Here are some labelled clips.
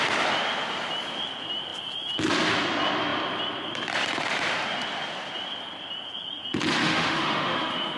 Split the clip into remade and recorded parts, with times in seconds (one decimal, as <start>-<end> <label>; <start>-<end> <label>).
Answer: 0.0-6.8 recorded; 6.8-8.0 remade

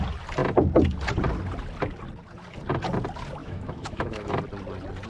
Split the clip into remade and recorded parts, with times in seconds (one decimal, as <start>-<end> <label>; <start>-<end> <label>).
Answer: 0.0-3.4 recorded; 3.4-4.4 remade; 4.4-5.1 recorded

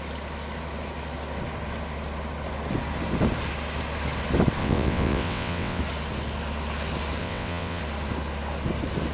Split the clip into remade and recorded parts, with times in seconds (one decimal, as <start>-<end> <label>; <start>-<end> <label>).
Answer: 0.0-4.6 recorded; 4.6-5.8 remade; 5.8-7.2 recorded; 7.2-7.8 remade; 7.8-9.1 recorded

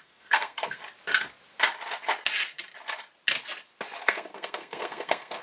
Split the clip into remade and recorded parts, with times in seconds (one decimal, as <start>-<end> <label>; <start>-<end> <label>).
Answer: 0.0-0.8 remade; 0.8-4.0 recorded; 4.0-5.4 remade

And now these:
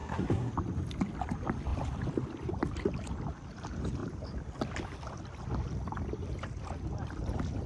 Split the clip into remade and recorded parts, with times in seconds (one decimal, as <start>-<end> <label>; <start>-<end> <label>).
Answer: 0.0-0.5 remade; 0.5-7.7 recorded

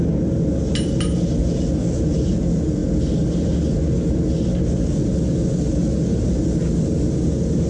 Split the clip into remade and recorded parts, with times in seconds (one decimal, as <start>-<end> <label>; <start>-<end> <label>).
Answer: 0.0-1.4 recorded; 1.4-2.3 remade; 2.3-7.7 recorded

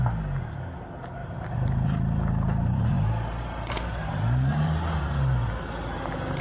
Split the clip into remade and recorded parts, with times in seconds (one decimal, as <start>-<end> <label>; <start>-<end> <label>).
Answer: 0.0-1.2 recorded; 1.2-5.0 remade; 5.0-6.4 recorded

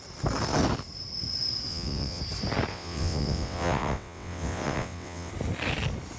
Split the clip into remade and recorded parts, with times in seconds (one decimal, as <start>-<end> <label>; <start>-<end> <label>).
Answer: 0.0-1.7 recorded; 1.7-2.2 remade; 2.2-2.7 recorded; 2.7-5.3 remade; 5.3-6.2 recorded